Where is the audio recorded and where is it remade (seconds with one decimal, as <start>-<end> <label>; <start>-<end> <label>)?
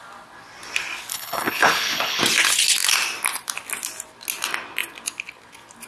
0.0-1.1 recorded; 1.1-2.2 remade; 2.2-5.9 recorded